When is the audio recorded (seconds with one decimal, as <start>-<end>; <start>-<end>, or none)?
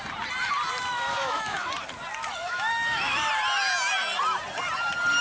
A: 0.0-0.9; 1.7-2.2; 3.3-5.2